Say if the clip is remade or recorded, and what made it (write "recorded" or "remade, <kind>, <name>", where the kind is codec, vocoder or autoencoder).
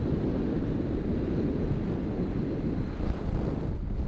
recorded